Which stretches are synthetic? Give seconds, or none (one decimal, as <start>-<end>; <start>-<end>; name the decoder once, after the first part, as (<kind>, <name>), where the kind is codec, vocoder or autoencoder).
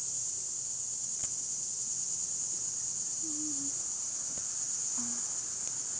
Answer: none